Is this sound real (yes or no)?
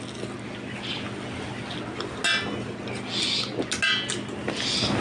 yes